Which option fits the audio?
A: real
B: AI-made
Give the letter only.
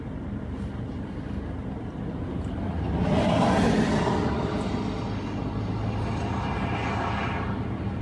A